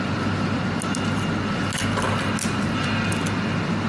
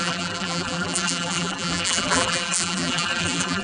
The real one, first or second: first